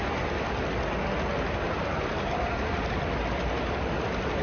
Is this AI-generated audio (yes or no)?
no